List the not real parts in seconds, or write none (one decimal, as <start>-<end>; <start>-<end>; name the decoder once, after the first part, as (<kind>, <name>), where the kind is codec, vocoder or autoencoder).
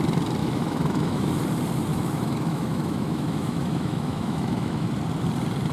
0.4-1.3 (autoencoder, DAC-VAE); 1.9-4.9